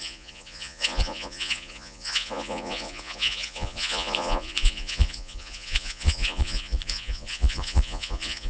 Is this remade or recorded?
remade